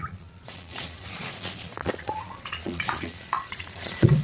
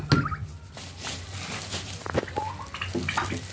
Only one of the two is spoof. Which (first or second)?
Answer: first